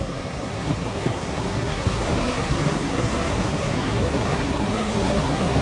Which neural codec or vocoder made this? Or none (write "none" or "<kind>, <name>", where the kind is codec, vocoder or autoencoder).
codec, SNAC